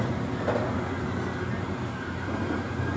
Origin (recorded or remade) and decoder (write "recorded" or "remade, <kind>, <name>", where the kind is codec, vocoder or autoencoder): recorded